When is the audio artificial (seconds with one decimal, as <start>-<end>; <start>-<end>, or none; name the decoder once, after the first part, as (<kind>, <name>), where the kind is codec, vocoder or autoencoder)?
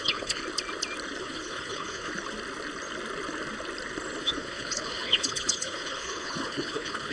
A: 0.0-0.4 (codec, HILCodec); 1.2-2.1; 4.2-7.1